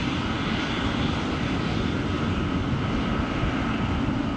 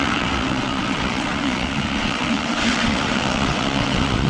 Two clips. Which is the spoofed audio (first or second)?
second